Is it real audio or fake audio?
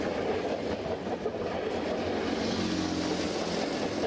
real